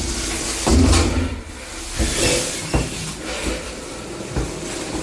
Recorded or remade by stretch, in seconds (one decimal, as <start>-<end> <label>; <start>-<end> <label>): 0.0-5.0 recorded